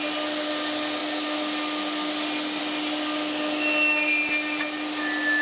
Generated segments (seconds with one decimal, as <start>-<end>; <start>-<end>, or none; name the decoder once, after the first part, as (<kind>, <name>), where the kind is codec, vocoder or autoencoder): none

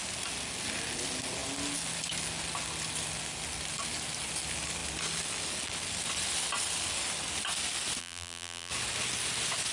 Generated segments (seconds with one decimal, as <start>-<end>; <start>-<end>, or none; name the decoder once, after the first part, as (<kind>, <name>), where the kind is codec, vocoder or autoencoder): 8.0-8.7 (vocoder, BigVGAN v2)

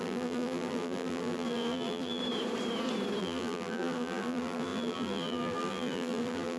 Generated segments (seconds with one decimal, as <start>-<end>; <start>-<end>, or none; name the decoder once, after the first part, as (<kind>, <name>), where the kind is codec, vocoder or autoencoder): 0.0-2.2 (vocoder, BigVGAN v2); 3.2-6.6

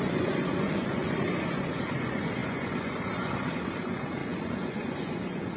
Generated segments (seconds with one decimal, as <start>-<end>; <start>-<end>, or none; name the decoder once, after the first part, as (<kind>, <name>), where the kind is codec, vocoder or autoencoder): 0.0-5.6 (vocoder, Vocos)

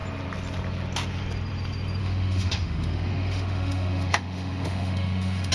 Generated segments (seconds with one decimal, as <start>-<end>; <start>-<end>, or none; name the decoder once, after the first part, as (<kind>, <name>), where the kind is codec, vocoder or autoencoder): 2.0-5.5 (autoencoder, DAC-VAE)